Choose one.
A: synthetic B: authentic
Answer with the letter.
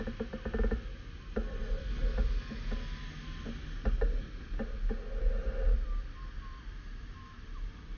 B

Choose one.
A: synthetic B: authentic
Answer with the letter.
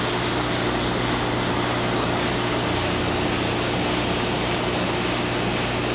B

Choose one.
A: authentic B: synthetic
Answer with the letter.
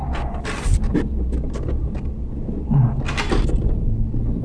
A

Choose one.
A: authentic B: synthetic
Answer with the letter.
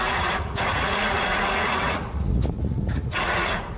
B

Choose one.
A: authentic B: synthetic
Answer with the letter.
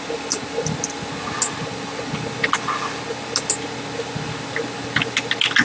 A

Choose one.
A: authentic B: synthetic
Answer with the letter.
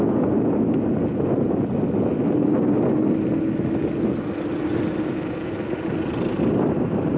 A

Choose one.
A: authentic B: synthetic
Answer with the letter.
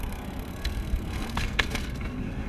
B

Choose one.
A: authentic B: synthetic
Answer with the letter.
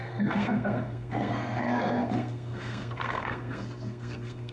B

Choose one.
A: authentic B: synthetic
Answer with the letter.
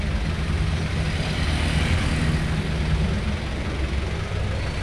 A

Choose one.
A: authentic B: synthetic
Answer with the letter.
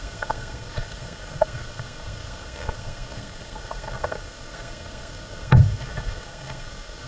B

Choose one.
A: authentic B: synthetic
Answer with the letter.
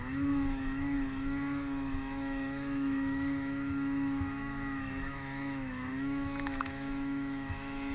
B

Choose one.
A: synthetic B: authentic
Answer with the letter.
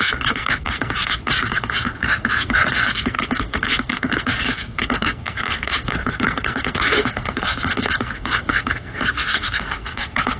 A